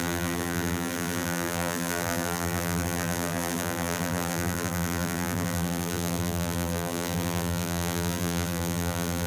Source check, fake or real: fake